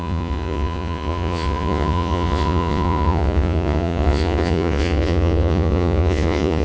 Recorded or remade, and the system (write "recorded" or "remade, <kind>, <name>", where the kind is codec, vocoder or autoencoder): remade, vocoder, Vocos